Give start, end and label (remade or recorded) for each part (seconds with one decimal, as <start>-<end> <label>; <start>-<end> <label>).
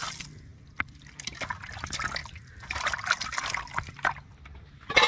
0.0-5.1 recorded